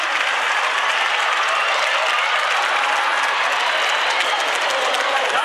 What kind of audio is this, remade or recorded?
recorded